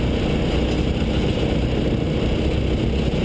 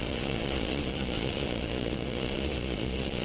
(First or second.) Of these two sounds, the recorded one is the first